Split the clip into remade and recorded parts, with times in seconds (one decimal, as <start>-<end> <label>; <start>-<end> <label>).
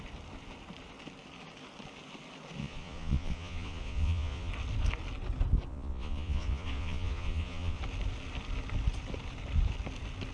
0.0-2.6 recorded; 2.6-4.5 remade; 4.5-5.7 recorded; 5.7-7.8 remade; 7.8-10.3 recorded